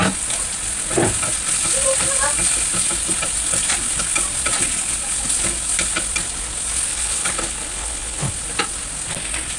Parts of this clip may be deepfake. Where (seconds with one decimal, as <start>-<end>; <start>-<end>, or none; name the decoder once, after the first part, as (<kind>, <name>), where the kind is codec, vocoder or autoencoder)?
6.9-8.3 (codec, HILCodec)